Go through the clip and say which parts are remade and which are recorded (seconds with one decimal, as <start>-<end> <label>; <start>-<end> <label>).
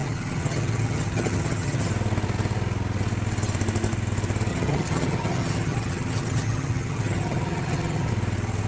0.0-1.9 remade; 1.9-4.5 recorded; 4.5-8.1 remade; 8.1-8.7 recorded